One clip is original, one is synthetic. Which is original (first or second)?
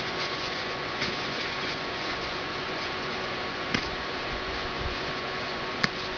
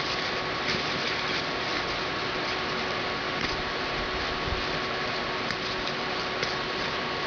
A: second